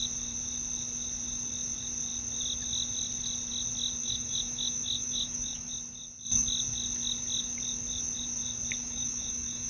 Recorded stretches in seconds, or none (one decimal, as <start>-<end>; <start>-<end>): 0.0-4.0; 5.7-8.8